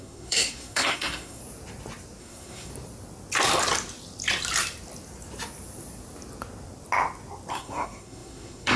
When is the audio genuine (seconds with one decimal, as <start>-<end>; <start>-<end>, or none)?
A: 1.4-2.2; 2.7-7.5